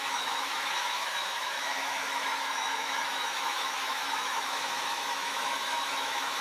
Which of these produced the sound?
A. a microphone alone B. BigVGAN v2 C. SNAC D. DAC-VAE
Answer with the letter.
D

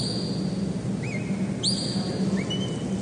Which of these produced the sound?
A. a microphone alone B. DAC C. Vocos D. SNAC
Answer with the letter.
A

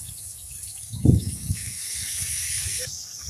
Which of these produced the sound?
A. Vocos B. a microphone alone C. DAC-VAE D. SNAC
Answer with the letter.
D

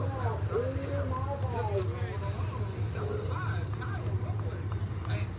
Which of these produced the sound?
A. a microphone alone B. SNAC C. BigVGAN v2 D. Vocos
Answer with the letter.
A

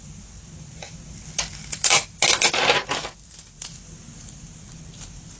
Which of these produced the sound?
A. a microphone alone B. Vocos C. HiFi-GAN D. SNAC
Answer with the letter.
A